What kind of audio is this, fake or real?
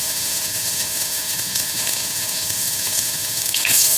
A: fake